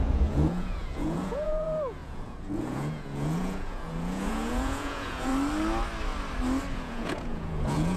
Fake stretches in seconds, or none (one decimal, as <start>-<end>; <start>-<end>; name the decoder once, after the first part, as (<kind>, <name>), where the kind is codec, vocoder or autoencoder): 0.0-5.3 (vocoder, Vocos); 6.7-8.0